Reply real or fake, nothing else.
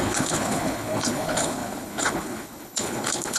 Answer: fake